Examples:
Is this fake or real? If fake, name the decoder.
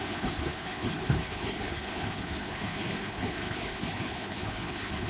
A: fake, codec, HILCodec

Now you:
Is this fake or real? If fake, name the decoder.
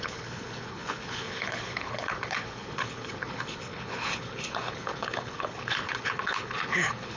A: fake, codec, HILCodec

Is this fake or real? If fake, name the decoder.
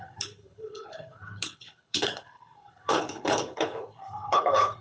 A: fake, codec, HILCodec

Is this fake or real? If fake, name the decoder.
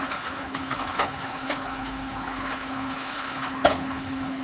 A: fake, codec, HILCodec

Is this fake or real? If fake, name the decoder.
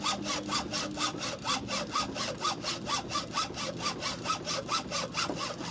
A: real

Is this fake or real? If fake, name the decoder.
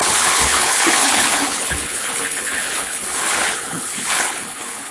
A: fake, codec, HILCodec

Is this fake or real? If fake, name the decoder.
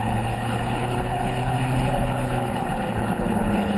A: fake, codec, HILCodec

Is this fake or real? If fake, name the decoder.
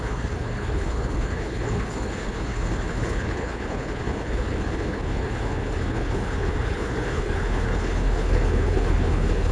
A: fake, codec, HILCodec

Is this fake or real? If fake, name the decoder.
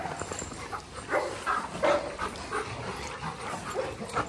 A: real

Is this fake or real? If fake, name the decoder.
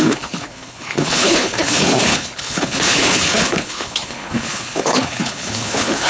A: fake, codec, HILCodec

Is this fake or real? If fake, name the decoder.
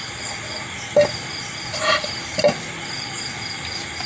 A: real